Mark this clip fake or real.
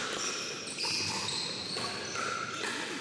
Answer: real